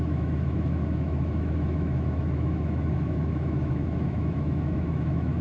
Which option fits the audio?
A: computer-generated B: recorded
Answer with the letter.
A